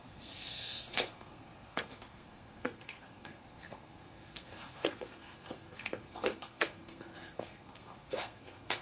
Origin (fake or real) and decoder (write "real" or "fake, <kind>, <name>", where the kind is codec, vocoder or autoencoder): fake, codec, SNAC